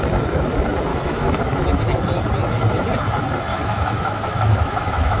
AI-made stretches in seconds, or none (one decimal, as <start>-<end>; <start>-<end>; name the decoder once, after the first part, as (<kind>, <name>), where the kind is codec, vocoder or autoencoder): 0.9-1.4 (autoencoder, DAC-VAE); 3.5-5.2

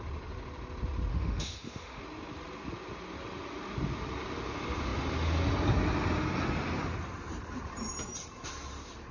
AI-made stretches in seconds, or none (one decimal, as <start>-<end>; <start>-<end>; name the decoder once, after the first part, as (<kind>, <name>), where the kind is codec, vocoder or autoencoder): 1.1-2.0 (autoencoder, DAC-VAE)

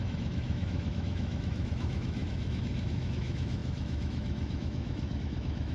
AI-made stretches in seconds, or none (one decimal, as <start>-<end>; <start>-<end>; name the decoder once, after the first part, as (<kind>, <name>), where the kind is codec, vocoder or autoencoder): 0.0-5.7 (autoencoder, DAC-VAE)

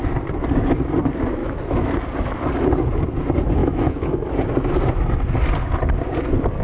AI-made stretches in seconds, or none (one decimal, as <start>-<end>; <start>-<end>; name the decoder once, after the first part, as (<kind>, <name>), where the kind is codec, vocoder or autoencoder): 1.4-1.9 (autoencoder, DAC-VAE); 3.6-4.3

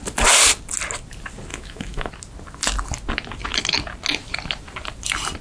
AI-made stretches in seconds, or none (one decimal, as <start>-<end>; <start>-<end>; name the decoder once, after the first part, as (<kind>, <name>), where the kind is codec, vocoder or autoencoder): 1.5-2.1 (autoencoder, DAC-VAE)

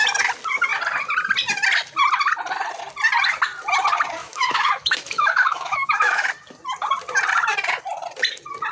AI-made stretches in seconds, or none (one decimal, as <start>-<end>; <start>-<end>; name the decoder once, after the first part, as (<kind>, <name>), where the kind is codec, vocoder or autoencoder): 4.2-6.3 (autoencoder, DAC-VAE)

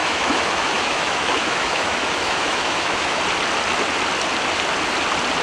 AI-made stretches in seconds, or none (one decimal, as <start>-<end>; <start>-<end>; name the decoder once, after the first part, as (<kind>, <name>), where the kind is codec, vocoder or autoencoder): 0.0-3.2 (autoencoder, DAC-VAE)